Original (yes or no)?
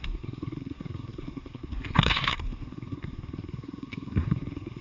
no